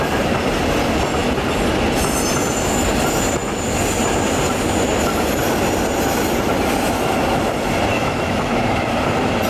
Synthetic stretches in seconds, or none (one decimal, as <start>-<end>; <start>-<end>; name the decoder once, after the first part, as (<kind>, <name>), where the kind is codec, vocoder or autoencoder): 7.9-8.6 (autoencoder, DAC-VAE)